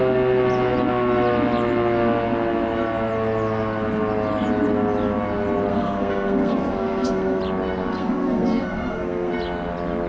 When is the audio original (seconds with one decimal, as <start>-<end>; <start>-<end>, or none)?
0.0-5.7; 7.4-7.9; 9.3-10.1